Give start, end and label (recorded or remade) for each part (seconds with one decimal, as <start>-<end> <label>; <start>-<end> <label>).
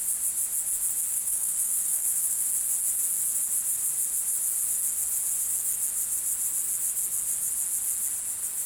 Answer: 0.0-1.1 recorded; 1.1-2.5 remade; 2.5-8.7 recorded